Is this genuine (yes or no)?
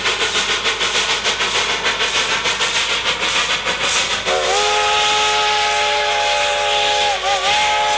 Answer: yes